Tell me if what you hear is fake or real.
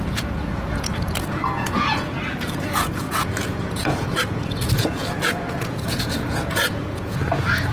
fake